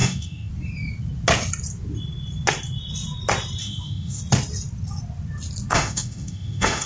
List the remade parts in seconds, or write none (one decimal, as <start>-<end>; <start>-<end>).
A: 0.0-0.5; 3.6-4.2; 5.7-6.9